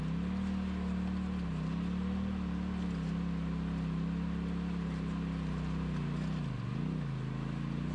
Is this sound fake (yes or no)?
no